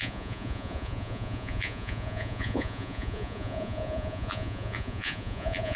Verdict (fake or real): fake